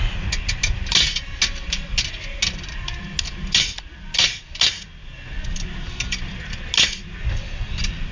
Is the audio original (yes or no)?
yes